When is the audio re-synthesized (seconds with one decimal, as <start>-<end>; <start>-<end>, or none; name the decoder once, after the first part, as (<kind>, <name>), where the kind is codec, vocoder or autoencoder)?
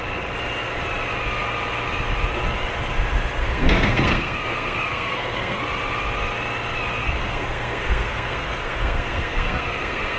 3.4-5.6 (codec, SNAC); 7.0-10.2